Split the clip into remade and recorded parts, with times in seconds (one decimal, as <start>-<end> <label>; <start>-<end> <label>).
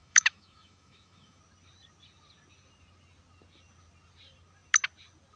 0.0-1.4 remade; 1.4-5.4 recorded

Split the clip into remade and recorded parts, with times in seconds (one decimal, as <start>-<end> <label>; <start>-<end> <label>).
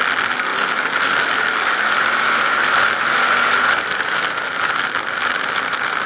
0.0-6.1 recorded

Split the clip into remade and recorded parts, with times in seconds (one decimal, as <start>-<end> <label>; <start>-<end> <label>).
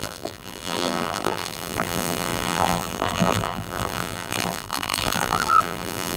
0.0-6.2 remade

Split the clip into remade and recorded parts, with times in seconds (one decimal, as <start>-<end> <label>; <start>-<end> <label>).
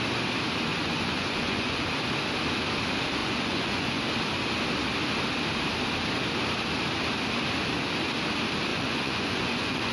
0.0-0.7 recorded; 0.7-1.8 remade; 1.8-3.2 recorded; 3.2-4.0 remade; 4.0-8.7 recorded; 8.7-9.9 remade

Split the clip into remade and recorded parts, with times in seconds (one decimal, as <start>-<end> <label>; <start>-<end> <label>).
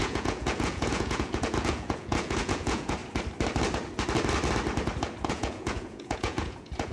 0.0-3.0 remade; 3.0-5.3 recorded; 5.3-6.9 remade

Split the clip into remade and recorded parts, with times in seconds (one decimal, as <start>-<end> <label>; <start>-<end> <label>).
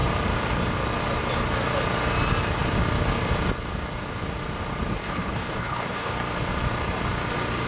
0.0-5.0 recorded; 5.0-6.1 remade; 6.1-7.7 recorded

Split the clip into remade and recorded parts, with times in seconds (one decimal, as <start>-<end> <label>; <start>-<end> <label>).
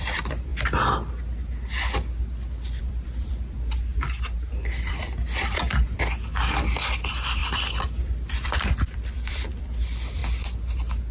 0.0-0.5 remade; 0.5-2.8 recorded; 2.8-3.9 remade; 3.9-4.5 recorded; 4.5-10.2 remade; 10.2-11.1 recorded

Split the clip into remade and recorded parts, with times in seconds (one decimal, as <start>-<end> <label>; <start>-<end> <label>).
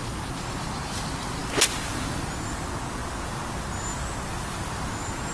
0.0-5.3 recorded